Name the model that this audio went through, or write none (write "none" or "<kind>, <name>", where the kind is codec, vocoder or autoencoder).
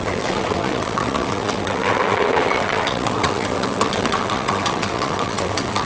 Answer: vocoder, WaveNeXt